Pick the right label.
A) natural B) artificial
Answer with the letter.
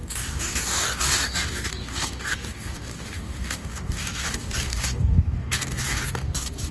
B